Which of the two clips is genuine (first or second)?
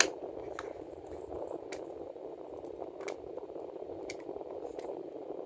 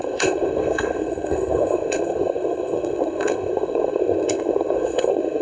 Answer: first